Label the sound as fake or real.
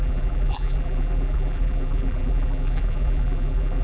fake